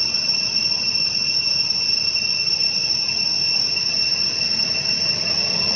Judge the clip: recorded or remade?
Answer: recorded